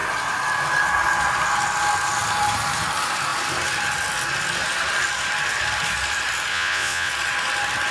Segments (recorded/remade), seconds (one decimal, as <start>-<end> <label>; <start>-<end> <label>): 0.0-6.5 recorded; 6.5-7.1 remade; 7.1-7.9 recorded